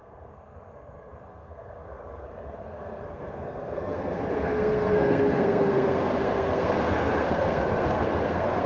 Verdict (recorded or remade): remade